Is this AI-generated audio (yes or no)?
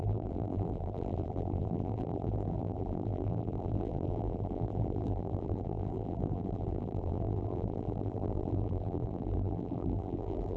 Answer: yes